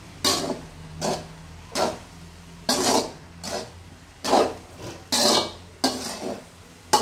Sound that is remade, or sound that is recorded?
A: recorded